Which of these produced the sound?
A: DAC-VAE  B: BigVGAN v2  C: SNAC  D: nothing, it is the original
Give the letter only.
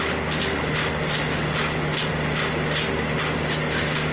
D